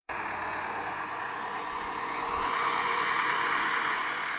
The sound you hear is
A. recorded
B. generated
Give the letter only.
B